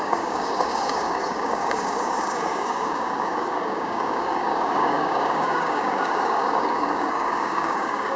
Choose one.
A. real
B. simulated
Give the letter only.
B